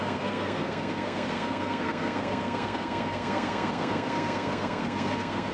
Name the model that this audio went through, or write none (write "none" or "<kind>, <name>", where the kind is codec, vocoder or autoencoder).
codec, SNAC